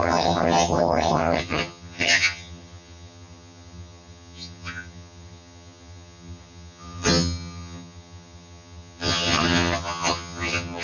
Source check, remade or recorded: remade